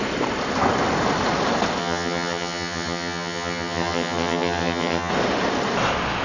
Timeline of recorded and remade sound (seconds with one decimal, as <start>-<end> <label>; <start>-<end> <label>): 0.0-1.8 recorded; 1.8-5.1 remade; 5.1-6.2 recorded